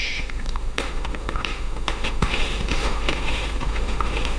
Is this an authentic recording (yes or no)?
no